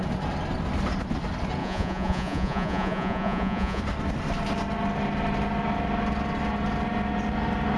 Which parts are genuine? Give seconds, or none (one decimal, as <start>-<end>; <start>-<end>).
0.0-1.6; 3.8-7.8